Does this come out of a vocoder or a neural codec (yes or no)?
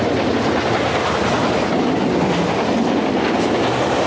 no